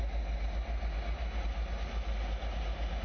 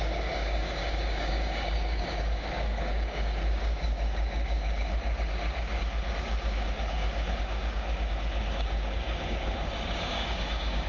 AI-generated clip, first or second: second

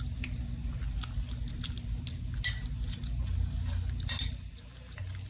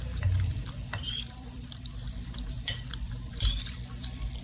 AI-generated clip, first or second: second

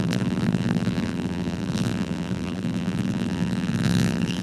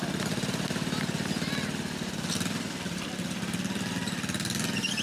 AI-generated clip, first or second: first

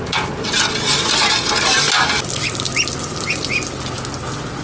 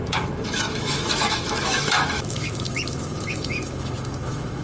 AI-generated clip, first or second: second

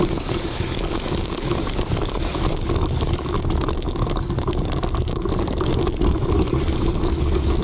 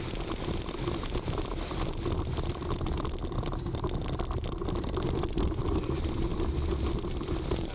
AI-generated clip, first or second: first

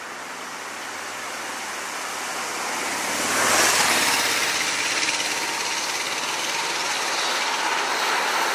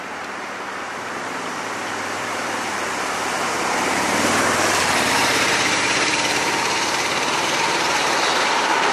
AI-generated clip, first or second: second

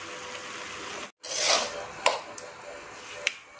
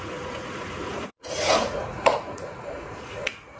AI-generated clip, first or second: second